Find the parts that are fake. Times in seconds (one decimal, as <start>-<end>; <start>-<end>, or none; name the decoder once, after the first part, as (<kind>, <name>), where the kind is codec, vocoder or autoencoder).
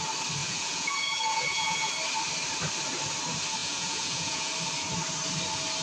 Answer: 0.4-1.9 (vocoder, Vocos); 3.6-4.5